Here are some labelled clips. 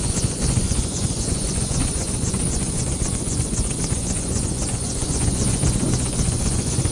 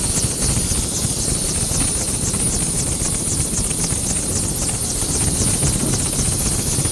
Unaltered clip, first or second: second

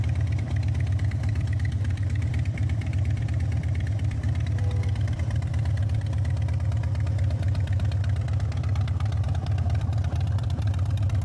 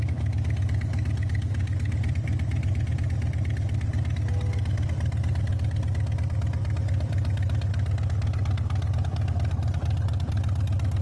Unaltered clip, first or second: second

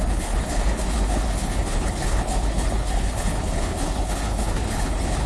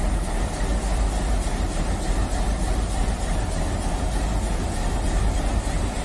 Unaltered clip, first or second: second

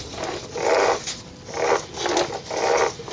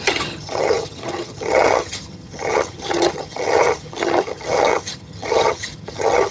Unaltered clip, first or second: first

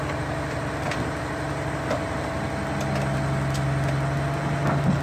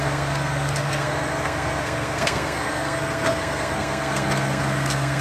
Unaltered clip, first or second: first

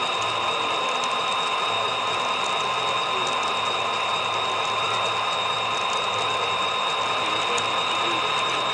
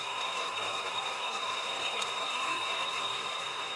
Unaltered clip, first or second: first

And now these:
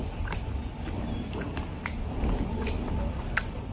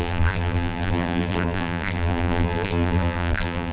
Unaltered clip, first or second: first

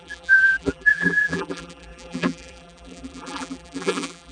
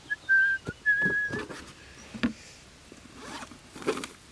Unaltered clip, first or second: second